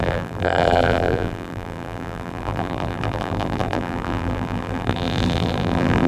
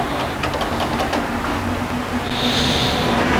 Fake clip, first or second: first